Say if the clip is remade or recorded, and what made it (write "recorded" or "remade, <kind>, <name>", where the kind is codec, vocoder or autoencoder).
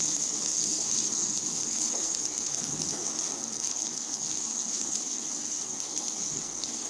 remade, codec, SNAC